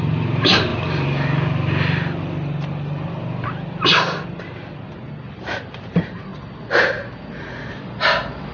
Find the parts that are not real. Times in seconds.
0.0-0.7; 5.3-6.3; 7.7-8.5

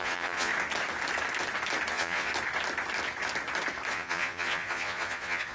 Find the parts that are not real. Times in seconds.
0.0-0.5; 1.9-2.3; 3.9-5.5

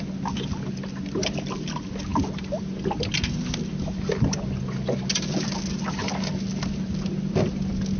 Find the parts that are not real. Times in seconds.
none

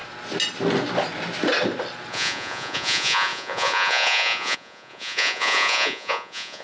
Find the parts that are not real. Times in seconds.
2.1-6.6